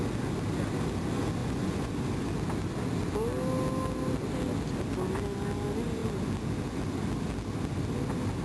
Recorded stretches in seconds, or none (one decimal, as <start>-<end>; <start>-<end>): 0.0-1.4; 1.9-8.4